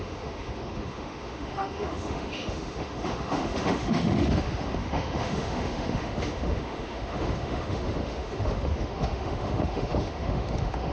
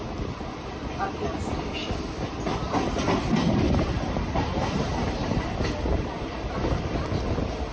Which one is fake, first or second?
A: first